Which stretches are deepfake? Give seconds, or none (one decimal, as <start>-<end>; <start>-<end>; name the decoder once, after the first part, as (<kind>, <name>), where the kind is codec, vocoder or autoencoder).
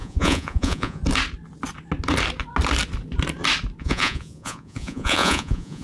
0.0-1.0 (vocoder, Vocos); 3.8-5.8